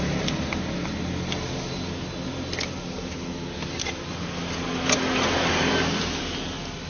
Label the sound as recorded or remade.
recorded